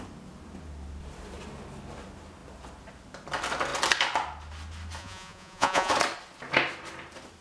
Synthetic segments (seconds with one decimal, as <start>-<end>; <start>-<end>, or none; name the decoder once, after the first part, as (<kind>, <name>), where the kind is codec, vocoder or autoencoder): 5.0-5.9 (vocoder, Vocos)